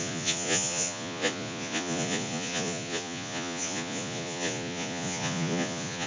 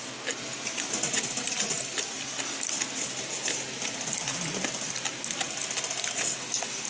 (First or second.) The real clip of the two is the second